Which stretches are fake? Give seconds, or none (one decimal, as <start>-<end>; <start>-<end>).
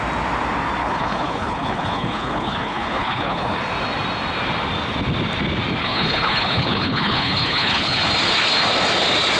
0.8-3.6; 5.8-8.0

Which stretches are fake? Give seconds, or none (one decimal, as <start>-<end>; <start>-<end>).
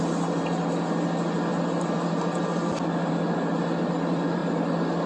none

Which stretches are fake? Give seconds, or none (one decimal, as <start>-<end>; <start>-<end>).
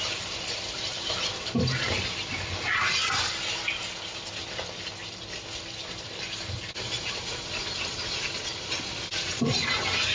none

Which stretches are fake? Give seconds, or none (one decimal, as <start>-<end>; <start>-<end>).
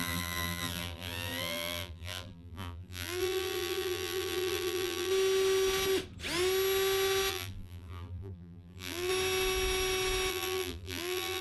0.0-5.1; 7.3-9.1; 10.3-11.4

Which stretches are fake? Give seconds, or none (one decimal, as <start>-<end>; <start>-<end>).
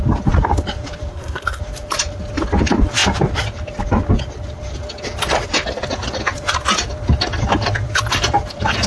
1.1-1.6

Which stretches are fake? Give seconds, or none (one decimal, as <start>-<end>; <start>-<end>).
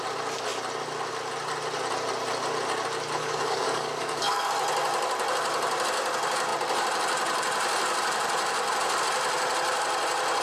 3.2-4.5